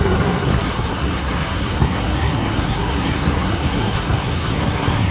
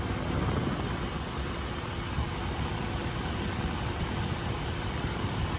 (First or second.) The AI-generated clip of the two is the first